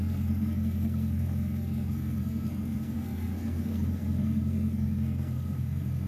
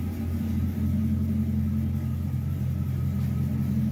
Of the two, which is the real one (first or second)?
second